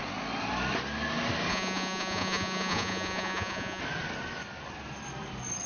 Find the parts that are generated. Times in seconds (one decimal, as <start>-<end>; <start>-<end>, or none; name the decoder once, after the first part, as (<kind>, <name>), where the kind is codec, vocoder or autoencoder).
1.5-3.8 (vocoder, Vocos)